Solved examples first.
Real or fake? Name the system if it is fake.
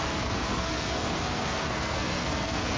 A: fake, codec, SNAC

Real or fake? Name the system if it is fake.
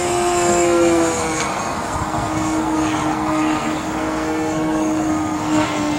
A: fake, codec, SNAC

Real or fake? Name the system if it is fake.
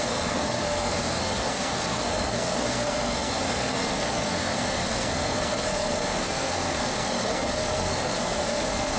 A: fake, codec, SNAC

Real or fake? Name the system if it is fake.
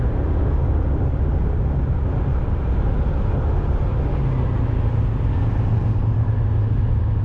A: real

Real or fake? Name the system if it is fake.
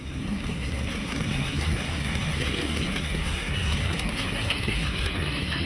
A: fake, codec, SNAC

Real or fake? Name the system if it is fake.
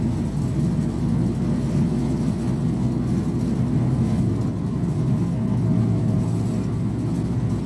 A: real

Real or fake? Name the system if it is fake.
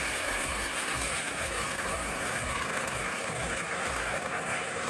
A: fake, codec, SNAC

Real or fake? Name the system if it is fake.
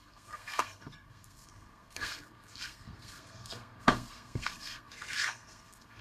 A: fake, codec, SNAC